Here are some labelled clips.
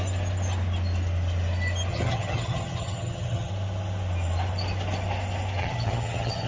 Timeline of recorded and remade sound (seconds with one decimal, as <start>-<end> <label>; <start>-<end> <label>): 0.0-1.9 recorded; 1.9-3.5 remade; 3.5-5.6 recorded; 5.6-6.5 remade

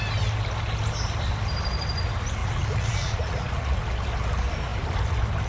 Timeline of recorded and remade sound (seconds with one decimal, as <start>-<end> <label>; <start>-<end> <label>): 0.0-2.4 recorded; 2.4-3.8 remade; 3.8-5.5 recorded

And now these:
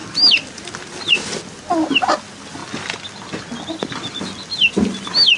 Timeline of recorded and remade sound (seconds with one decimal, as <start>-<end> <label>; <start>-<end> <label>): 0.0-5.4 recorded

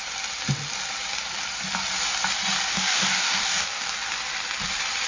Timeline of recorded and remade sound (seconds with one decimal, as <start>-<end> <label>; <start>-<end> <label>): 0.0-2.7 recorded; 2.7-3.9 remade; 3.9-5.1 recorded